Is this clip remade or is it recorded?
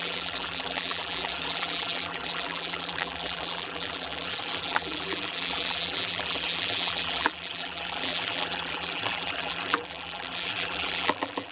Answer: remade